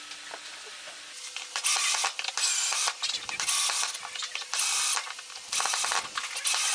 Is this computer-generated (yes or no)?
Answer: no